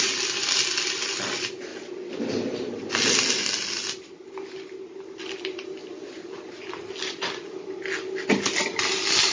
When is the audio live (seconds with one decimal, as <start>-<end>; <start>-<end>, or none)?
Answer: 0.0-5.8; 6.6-9.3